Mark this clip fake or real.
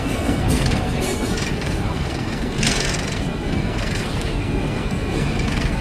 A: fake